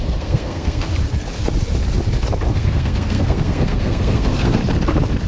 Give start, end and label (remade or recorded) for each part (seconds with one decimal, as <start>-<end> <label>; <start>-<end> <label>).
0.0-0.9 remade; 0.9-2.5 recorded; 2.5-4.6 remade; 4.6-5.3 recorded